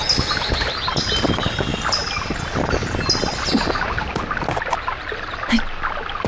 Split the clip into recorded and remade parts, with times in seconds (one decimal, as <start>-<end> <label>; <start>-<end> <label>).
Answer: 0.0-6.3 recorded

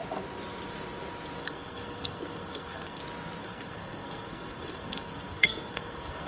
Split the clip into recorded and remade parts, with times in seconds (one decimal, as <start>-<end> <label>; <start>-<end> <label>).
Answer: 0.0-1.4 recorded; 1.4-3.0 remade; 3.0-3.4 recorded; 3.4-6.3 remade